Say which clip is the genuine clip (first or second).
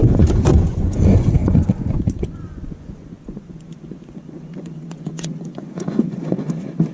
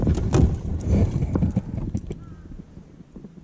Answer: second